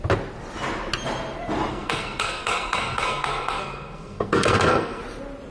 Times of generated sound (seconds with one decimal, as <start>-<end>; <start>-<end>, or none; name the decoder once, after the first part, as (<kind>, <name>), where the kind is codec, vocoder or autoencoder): 1.7-5.0 (codec, SNAC)